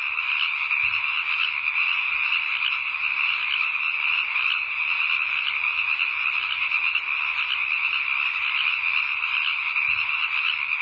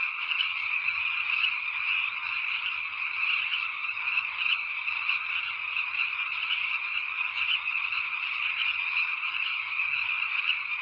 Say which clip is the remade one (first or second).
second